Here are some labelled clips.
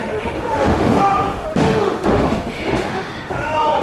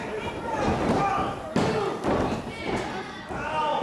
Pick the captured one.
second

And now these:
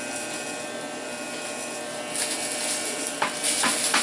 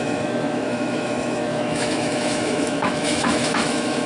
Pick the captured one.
first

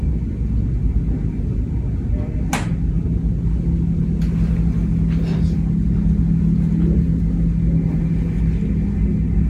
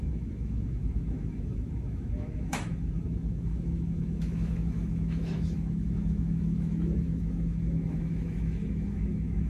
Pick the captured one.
first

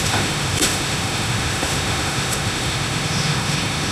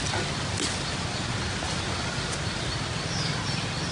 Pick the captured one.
second